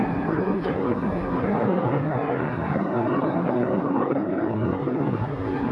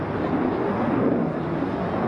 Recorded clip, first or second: second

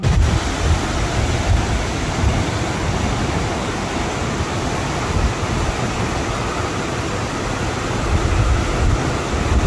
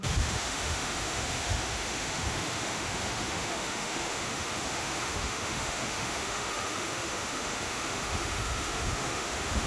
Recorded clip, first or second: first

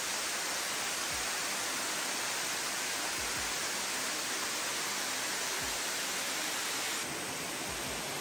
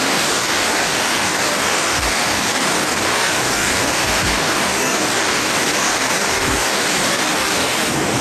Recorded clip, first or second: first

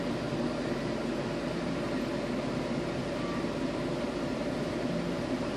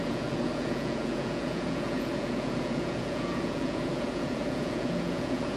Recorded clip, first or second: first